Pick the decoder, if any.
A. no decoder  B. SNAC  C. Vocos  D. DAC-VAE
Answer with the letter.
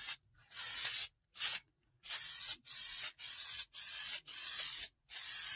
C